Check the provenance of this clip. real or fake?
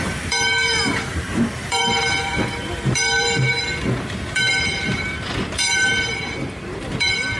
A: fake